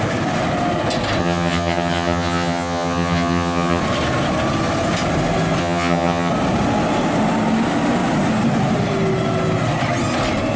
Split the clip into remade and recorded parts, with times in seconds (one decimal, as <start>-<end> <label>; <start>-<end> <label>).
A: 0.0-1.2 recorded; 1.2-3.8 remade; 3.8-5.6 recorded; 5.6-6.3 remade; 6.3-10.6 recorded